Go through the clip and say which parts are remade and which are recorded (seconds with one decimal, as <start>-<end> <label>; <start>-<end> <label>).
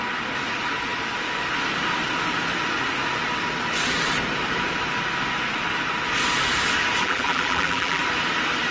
0.0-7.0 recorded; 7.0-8.0 remade; 8.0-8.7 recorded